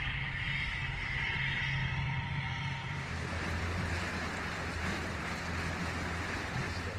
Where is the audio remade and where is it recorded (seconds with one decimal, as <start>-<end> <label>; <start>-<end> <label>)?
0.0-0.8 recorded; 0.8-1.4 remade; 1.4-1.8 recorded; 1.8-4.1 remade; 4.1-4.9 recorded; 4.9-5.4 remade; 5.4-7.0 recorded